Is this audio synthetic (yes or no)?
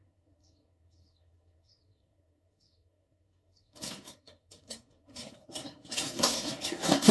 yes